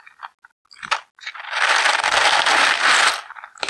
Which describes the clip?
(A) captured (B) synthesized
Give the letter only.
A